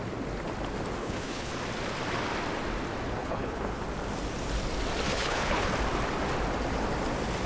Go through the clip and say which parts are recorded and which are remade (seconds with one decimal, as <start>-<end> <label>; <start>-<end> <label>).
0.0-1.0 recorded; 1.0-1.5 remade; 1.5-3.2 recorded; 3.2-3.8 remade; 3.8-5.1 recorded; 5.1-5.7 remade; 5.7-7.5 recorded